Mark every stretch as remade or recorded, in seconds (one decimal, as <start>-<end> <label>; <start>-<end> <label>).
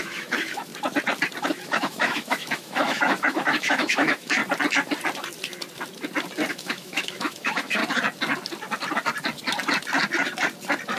0.0-0.7 remade; 0.7-1.4 recorded; 1.4-4.4 remade; 4.4-6.5 recorded; 6.5-7.8 remade; 7.8-11.0 recorded